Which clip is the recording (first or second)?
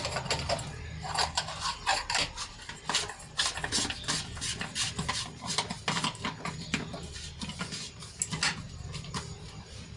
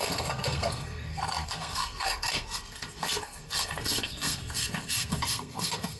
first